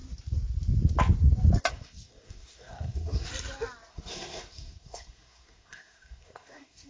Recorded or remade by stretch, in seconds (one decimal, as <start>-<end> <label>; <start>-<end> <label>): 0.0-1.7 recorded; 1.7-3.3 remade; 3.3-3.9 recorded; 3.9-6.9 remade